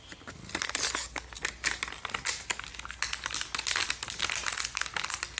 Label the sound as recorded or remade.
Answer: recorded